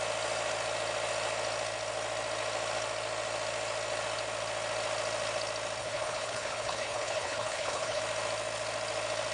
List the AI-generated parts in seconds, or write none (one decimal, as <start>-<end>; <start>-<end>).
5.8-8.0